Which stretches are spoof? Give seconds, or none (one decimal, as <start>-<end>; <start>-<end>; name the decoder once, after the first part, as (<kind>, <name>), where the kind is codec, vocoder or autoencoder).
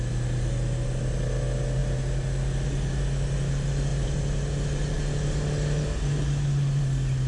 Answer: none